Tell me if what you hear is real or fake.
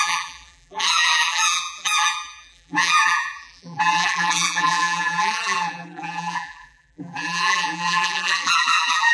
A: fake